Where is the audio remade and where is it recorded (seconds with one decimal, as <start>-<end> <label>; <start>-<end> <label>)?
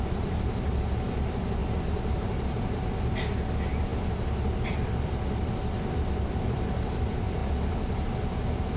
0.0-1.6 recorded; 1.6-2.9 remade; 2.9-8.8 recorded